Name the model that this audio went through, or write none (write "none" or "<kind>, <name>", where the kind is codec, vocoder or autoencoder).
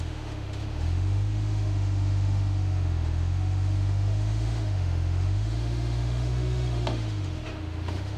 autoencoder, DAC-VAE